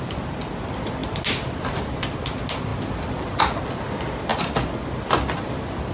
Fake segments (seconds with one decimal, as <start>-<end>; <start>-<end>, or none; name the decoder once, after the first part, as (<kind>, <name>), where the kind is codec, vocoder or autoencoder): 2.7-3.4 (vocoder, BigVGAN v2); 4.3-5.0